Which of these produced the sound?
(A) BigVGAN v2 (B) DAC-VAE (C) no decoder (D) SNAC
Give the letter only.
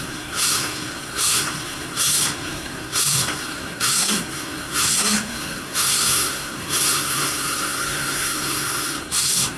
D